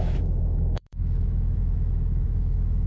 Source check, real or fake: fake